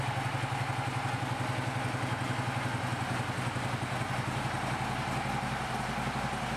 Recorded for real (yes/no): yes